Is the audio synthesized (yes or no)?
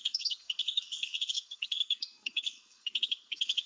yes